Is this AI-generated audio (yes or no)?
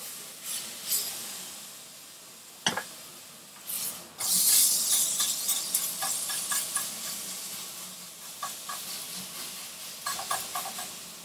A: no